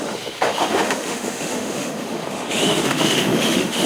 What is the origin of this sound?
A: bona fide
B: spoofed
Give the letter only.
B